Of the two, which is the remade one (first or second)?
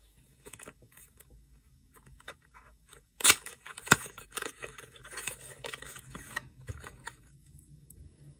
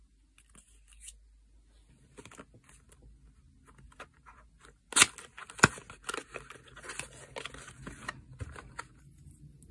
first